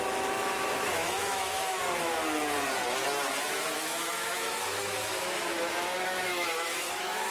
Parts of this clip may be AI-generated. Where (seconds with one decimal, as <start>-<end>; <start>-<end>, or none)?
0.0-2.2; 3.4-7.3